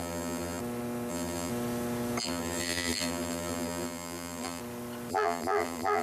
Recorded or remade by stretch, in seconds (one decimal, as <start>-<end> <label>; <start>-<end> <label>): 0.0-0.6 remade; 0.6-1.1 recorded; 1.1-1.5 remade; 1.5-2.2 recorded; 2.2-4.6 remade; 4.6-5.1 recorded; 5.1-6.0 remade